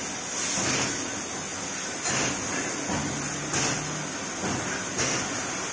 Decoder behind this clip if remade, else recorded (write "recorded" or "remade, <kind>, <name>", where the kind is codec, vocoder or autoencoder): recorded